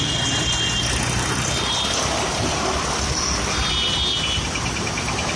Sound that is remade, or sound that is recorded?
recorded